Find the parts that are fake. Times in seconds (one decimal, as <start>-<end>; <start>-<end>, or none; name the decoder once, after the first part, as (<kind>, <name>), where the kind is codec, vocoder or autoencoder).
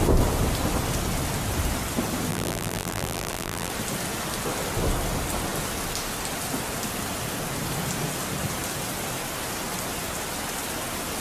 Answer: 2.3-3.7 (vocoder, BigVGAN v2)